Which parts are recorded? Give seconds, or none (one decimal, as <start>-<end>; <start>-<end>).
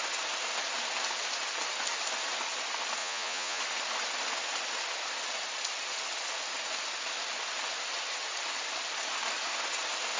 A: 0.0-3.0; 3.6-10.2